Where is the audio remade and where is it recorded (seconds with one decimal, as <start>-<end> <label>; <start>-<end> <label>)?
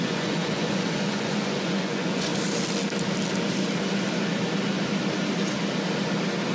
0.0-2.3 remade; 2.3-6.5 recorded